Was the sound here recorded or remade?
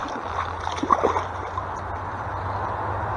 recorded